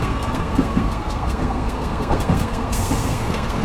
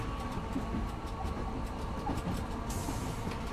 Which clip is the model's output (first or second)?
first